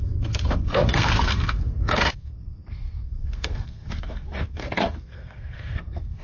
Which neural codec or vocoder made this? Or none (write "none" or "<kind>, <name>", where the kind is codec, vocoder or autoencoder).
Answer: codec, SNAC